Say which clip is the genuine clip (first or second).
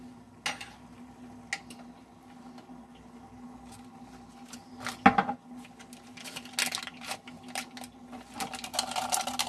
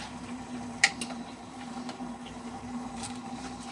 first